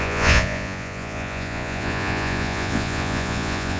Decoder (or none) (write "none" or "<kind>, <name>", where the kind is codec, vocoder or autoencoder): vocoder, Vocos